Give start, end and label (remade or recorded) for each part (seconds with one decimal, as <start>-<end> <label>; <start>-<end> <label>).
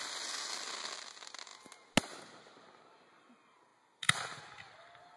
0.0-5.2 recorded